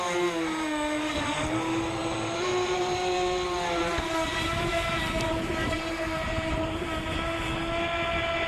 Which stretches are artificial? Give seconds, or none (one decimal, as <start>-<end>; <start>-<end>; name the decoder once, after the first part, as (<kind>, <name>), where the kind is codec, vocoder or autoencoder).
2.0-2.5 (vocoder, BigVGAN v2); 4.3-7.0